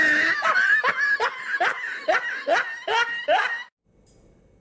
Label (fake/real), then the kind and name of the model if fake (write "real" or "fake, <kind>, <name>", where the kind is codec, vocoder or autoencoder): real